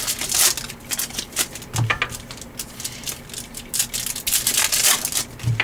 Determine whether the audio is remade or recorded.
recorded